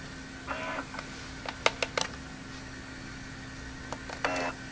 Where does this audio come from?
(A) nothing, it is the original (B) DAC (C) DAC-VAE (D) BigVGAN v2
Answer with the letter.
A